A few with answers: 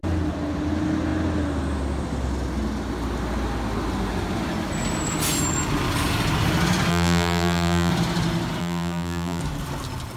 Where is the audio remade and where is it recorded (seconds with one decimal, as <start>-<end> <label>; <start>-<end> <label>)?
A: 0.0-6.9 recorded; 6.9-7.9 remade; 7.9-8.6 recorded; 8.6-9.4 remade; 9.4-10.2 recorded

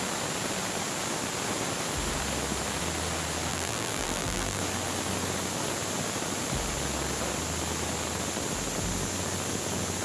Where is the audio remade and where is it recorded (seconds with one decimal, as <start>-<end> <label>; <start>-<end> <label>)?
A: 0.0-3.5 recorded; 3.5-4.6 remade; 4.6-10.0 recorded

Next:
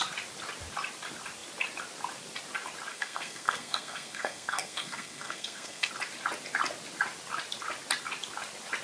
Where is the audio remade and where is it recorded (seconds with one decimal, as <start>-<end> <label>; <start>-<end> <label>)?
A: 0.0-2.9 recorded; 2.9-5.9 remade; 5.9-8.8 recorded

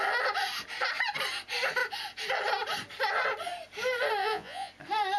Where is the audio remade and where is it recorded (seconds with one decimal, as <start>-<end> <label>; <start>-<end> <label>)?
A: 0.0-4.2 recorded; 4.2-4.7 remade; 4.7-5.2 recorded

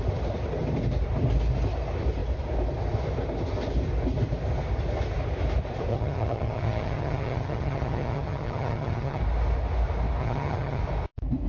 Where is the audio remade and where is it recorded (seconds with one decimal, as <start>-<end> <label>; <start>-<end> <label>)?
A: 0.0-5.9 recorded; 5.9-9.2 remade; 9.2-10.2 recorded; 10.2-10.8 remade; 10.8-11.5 recorded

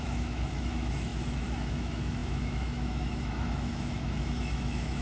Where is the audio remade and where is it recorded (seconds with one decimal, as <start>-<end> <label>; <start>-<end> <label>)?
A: 0.0-5.0 remade

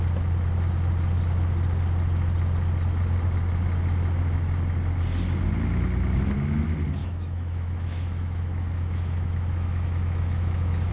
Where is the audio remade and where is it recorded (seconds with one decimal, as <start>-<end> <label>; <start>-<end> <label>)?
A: 0.0-7.0 recorded; 7.0-10.9 remade

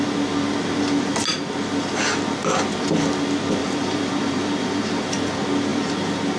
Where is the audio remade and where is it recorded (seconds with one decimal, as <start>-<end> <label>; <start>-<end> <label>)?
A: 0.0-3.6 recorded; 3.6-5.0 remade; 5.0-6.4 recorded